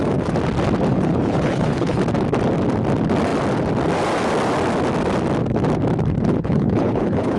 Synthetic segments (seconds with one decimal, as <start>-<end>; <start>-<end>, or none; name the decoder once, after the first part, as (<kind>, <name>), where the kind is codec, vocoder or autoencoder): 0.9-2.0 (codec, HILCodec); 6.4-7.4